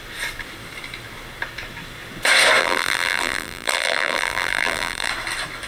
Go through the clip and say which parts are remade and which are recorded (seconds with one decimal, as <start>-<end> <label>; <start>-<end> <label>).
0.0-2.6 recorded; 2.6-5.1 remade; 5.1-5.7 recorded